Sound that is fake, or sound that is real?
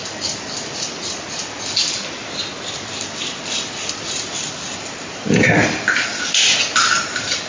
real